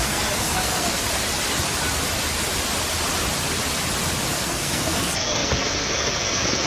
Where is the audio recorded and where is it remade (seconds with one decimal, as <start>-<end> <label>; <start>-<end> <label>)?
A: 0.0-1.0 remade; 1.0-4.3 recorded; 4.3-6.7 remade